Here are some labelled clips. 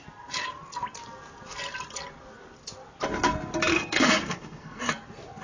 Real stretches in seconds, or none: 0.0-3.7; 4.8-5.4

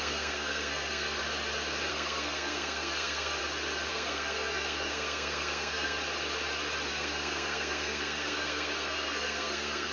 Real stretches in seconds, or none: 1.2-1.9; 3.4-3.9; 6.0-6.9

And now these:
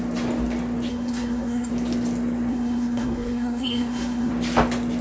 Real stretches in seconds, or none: 0.0-0.9; 1.7-2.5; 4.3-5.0

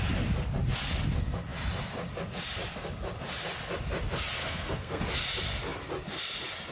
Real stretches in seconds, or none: 0.0-4.4; 5.0-6.7